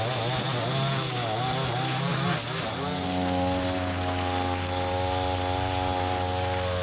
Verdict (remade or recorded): recorded